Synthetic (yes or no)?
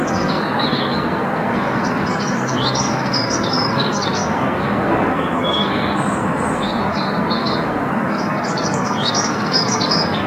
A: yes